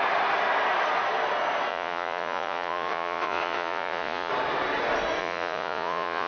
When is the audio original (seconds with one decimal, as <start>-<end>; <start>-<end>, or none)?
0.0-1.7; 4.3-5.2